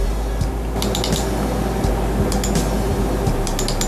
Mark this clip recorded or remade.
recorded